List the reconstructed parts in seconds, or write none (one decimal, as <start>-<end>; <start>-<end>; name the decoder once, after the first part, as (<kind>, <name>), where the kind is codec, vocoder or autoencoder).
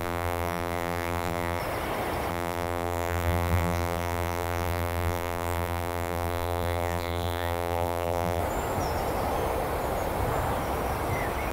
0.0-1.6 (vocoder, BigVGAN v2); 2.3-8.4